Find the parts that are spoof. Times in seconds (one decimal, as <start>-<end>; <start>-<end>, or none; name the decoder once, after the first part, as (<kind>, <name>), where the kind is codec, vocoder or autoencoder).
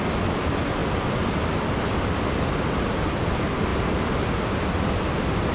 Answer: none